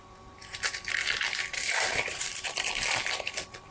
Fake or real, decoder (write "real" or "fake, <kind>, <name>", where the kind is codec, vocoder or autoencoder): fake, vocoder, BigVGAN v2